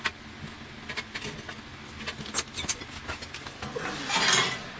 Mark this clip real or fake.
real